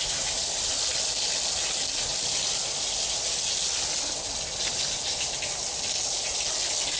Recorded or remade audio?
recorded